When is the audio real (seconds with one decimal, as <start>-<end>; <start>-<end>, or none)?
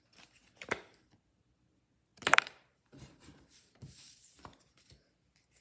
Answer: 0.0-2.1; 4.4-5.6